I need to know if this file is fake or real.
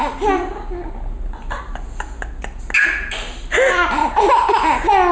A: real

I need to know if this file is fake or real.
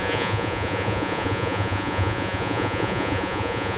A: fake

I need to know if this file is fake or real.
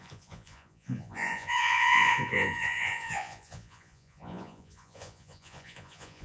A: fake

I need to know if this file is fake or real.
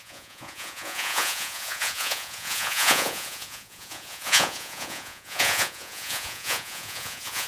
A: fake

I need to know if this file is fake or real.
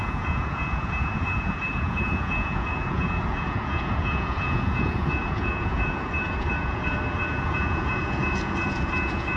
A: fake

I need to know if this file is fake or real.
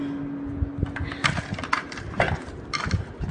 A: real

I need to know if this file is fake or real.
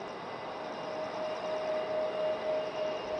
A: real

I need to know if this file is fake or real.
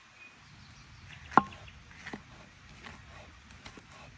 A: real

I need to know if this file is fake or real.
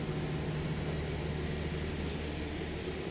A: real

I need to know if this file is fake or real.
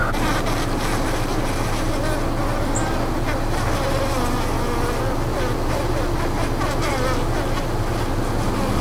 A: real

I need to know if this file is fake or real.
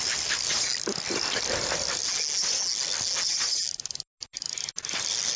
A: real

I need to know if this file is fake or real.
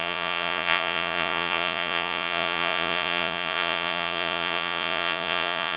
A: fake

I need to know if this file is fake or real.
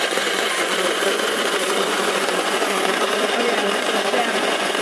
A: fake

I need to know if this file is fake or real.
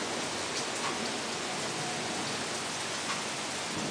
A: fake